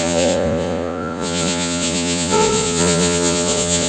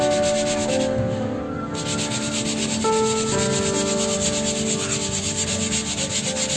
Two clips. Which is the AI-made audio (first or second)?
first